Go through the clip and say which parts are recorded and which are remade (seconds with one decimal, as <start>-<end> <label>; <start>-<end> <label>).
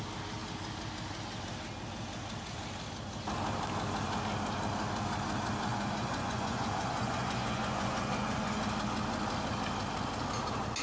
0.0-5.7 recorded; 5.7-8.6 remade; 8.6-10.8 recorded